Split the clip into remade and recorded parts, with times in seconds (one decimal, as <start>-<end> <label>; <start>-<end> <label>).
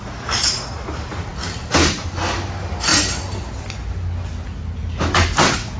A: 0.0-5.8 recorded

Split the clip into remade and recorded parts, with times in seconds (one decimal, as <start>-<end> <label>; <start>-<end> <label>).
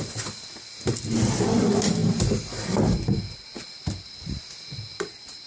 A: 0.0-5.5 recorded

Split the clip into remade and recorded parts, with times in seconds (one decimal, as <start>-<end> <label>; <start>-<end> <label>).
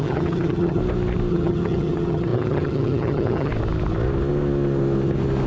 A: 0.0-0.8 remade; 0.8-1.3 recorded; 1.3-3.5 remade; 3.5-5.5 recorded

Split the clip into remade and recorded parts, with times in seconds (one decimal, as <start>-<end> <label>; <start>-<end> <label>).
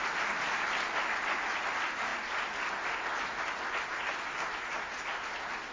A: 0.0-5.7 recorded